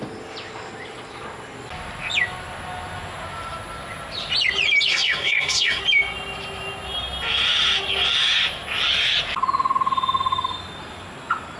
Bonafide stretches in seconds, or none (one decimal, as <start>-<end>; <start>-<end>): 0.0-4.9; 5.8-11.6